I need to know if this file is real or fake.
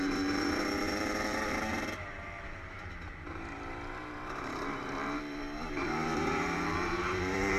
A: fake